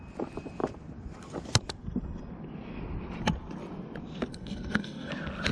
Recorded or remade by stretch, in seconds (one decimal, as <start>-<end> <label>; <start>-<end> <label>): 0.0-4.3 recorded; 4.3-5.1 remade; 5.1-5.5 recorded